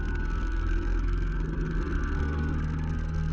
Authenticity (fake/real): fake